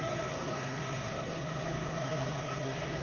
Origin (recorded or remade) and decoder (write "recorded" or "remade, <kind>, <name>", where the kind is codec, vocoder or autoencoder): remade, codec, SNAC